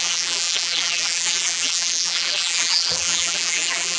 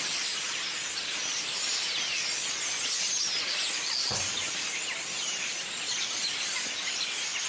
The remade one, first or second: first